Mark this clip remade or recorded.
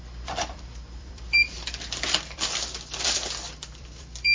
remade